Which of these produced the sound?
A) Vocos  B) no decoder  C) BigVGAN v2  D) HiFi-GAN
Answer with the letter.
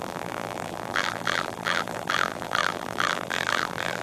C